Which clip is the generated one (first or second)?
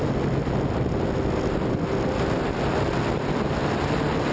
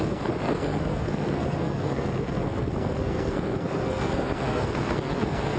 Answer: second